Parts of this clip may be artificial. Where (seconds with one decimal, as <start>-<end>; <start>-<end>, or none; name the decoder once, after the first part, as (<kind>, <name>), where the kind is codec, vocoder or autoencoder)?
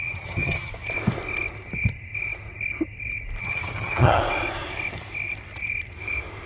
0.0-0.7 (vocoder, HiFi-GAN); 3.4-4.2